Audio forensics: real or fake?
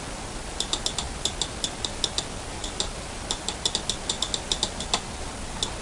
real